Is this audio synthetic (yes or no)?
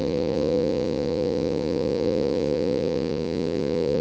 yes